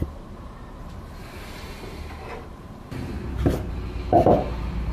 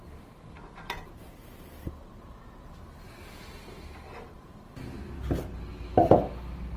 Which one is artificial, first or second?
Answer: first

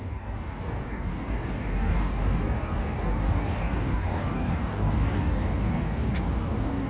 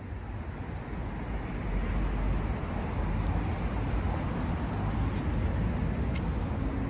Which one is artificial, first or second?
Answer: first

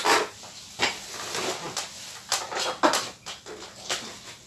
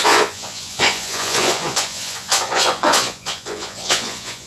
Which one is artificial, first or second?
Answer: second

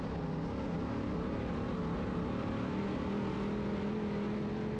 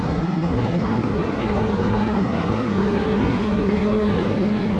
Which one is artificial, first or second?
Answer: second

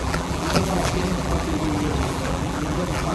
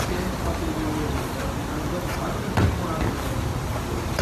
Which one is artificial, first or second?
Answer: first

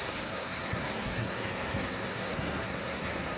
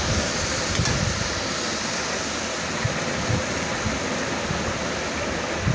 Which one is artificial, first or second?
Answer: first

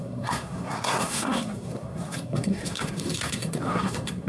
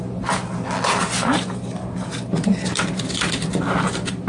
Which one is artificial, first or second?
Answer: first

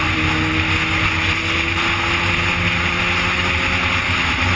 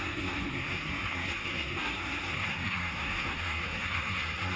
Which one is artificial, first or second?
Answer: second